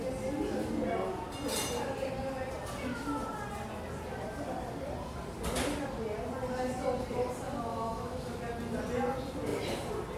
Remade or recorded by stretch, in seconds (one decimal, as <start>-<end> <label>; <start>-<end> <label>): 0.0-7.7 recorded; 7.7-8.4 remade; 8.4-10.2 recorded